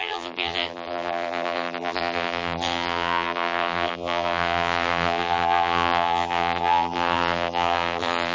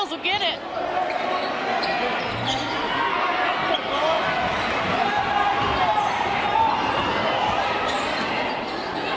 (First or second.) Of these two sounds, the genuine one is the second